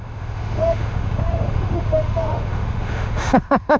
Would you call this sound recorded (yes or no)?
no